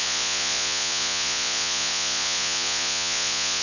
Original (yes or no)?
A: no